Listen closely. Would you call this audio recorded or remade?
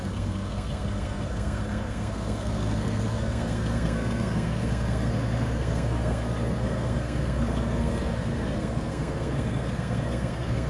remade